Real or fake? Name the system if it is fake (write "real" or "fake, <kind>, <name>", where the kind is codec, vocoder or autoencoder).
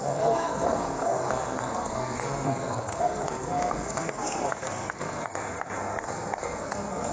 fake, codec, SNAC